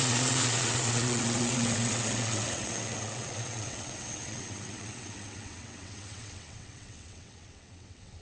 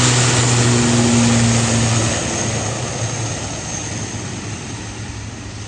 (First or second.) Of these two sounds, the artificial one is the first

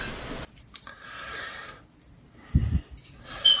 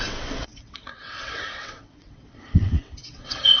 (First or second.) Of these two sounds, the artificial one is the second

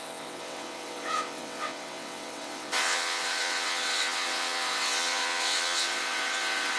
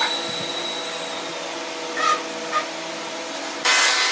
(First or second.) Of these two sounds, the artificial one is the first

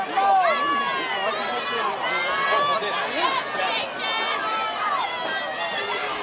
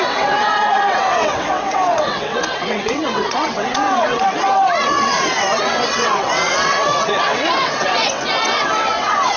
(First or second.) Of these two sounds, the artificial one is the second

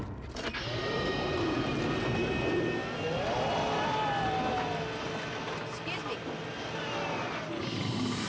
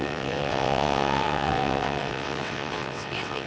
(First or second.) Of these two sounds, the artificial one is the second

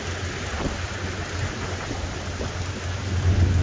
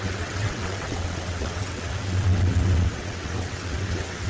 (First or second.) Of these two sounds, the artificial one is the second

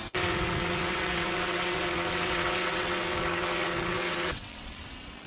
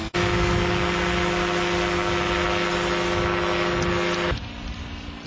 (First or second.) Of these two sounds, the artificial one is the first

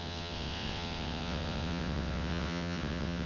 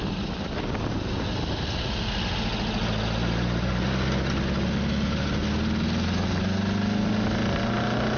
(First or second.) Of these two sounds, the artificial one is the first